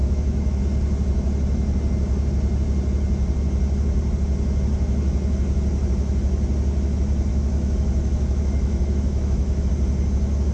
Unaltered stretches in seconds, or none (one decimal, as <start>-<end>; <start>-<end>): 0.6-7.3; 9.7-10.5